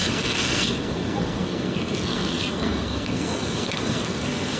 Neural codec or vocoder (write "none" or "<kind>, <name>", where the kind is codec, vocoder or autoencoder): codec, SNAC